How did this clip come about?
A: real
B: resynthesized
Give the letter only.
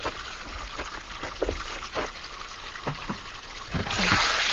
A